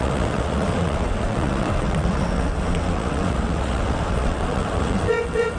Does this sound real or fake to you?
fake